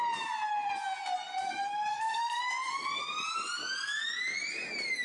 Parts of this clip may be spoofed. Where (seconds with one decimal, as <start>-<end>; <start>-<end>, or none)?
1.9-2.4